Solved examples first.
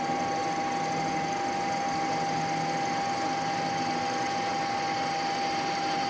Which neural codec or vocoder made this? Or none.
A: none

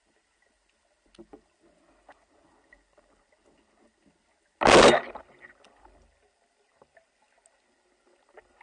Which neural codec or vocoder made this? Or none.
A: none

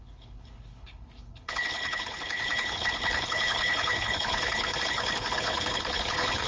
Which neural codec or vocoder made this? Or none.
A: codec, HILCodec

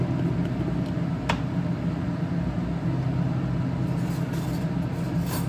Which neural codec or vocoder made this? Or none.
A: none